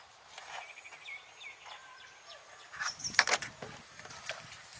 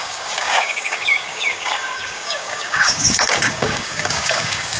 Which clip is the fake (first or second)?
second